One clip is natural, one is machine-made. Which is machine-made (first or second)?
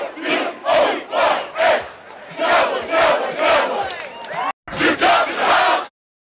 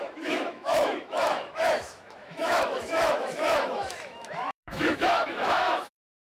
second